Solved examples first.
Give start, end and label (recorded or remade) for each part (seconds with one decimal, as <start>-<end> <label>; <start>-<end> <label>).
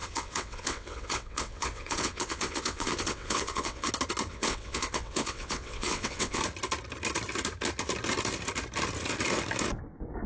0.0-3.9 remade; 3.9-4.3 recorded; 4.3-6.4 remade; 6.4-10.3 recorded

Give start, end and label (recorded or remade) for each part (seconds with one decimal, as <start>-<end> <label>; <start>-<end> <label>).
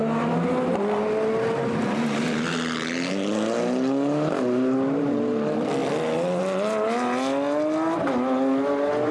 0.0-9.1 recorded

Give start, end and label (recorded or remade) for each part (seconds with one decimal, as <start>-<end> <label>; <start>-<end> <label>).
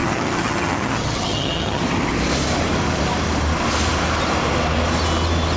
0.0-1.8 remade; 1.8-5.6 recorded